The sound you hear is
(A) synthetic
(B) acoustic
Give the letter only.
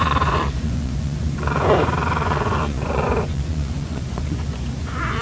A